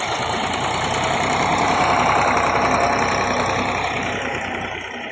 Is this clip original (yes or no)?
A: no